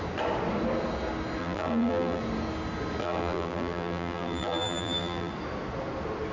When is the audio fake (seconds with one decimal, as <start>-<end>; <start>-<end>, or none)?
1.4-2.2; 3.0-5.3